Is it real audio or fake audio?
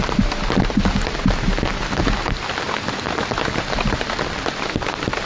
real